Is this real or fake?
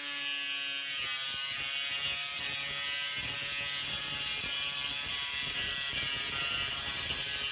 real